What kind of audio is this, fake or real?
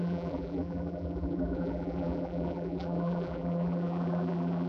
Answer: fake